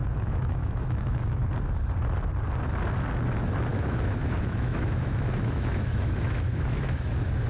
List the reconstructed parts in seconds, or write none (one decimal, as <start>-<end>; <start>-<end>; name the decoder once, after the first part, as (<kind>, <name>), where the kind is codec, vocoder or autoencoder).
0.0-1.5 (autoencoder, DAC-VAE); 3.7-7.1